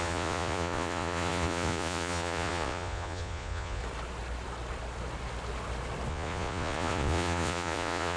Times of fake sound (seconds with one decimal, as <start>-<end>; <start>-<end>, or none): 0.0-3.8; 6.1-8.2